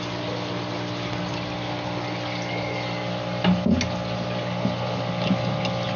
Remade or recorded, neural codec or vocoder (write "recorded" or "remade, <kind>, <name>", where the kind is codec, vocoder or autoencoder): recorded